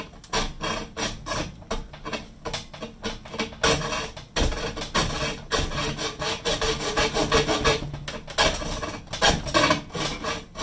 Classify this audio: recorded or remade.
recorded